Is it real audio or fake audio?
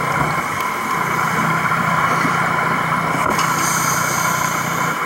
real